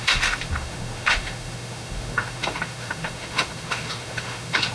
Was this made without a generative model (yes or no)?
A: no